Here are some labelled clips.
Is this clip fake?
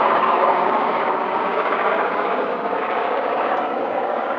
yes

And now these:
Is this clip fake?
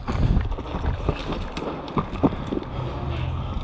no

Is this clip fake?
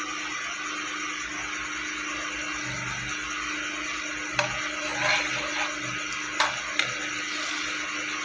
no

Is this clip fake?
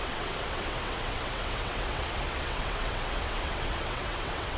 yes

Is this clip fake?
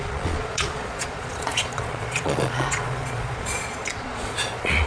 yes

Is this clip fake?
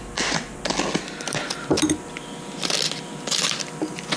no